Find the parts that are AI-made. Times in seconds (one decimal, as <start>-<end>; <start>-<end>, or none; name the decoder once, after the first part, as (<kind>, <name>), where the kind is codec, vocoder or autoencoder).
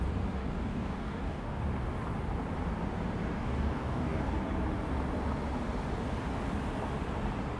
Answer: 0.4-1.7 (codec, DAC); 3.3-4.4